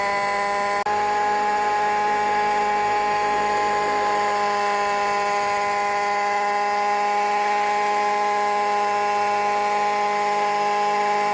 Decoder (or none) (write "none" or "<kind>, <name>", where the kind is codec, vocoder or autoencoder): none